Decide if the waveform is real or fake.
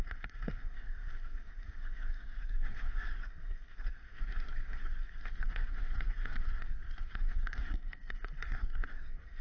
fake